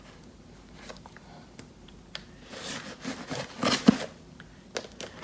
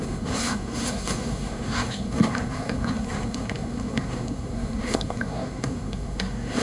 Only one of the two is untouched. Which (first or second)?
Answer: first